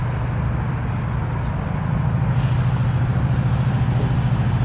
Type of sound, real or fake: real